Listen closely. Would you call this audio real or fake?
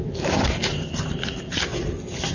real